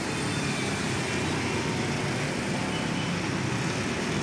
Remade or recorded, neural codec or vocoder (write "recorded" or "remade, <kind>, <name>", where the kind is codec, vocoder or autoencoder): recorded